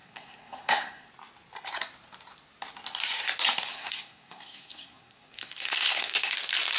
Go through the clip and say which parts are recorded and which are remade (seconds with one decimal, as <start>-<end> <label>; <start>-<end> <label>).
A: 0.0-1.1 remade; 1.1-3.7 recorded; 3.7-6.3 remade; 6.3-6.8 recorded